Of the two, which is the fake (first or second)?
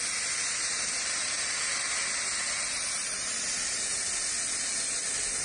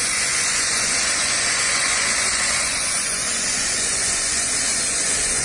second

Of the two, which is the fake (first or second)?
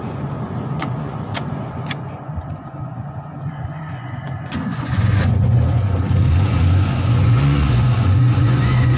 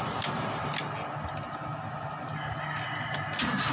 first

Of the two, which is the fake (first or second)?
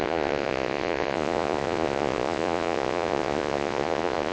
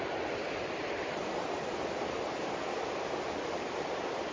first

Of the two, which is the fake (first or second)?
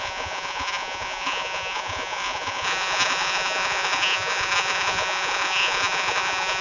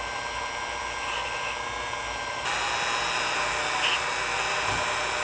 first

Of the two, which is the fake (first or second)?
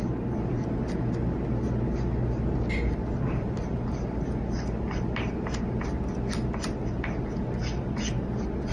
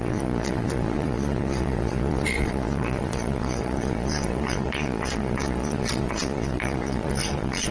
second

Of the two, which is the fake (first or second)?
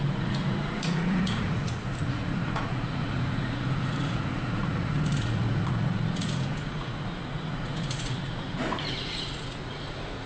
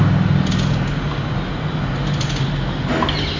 first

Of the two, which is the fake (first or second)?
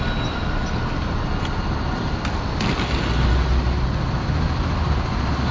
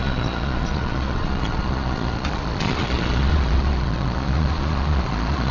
second